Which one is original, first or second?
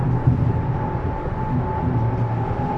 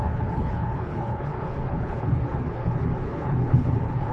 first